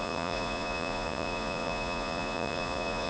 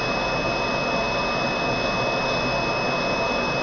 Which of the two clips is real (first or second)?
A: second